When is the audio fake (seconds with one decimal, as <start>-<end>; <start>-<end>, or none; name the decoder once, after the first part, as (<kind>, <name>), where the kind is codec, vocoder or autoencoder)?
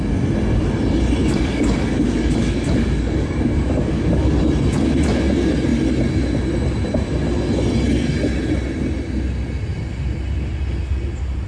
1.2-4.4 (codec, DAC)